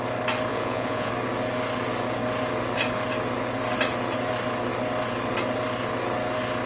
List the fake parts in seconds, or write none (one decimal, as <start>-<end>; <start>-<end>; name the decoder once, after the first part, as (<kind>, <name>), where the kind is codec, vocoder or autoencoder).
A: 0.5-1.1 (vocoder, Vocos)